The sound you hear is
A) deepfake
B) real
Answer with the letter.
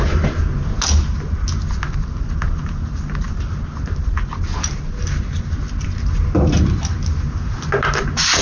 B